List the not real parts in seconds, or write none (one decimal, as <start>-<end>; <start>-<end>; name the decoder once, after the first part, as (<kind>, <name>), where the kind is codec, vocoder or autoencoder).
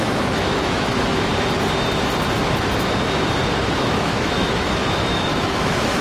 0.0-1.3 (autoencoder, DAC-VAE); 3.8-6.0